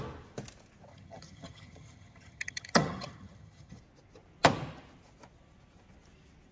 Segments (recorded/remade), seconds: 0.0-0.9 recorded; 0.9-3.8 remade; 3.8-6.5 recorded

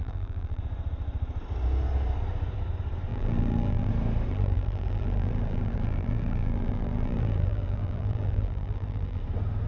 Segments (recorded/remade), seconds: 0.0-0.6 remade; 0.6-3.1 recorded; 3.1-3.9 remade; 3.9-4.3 recorded; 4.3-9.2 remade; 9.2-9.7 recorded

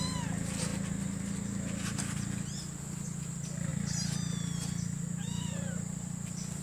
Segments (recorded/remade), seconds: 0.0-6.6 recorded

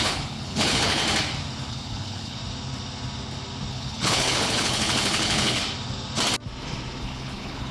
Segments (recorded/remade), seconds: 0.0-1.0 remade; 1.0-1.7 recorded; 1.7-2.4 remade; 2.4-3.7 recorded; 3.7-5.6 remade; 5.6-7.0 recorded; 7.0-7.7 remade

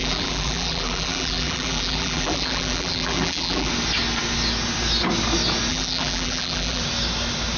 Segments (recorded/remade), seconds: 0.0-3.7 remade; 3.7-5.7 recorded; 5.7-6.8 remade; 6.8-7.6 recorded

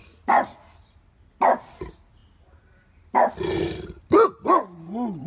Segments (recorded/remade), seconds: 0.0-5.3 recorded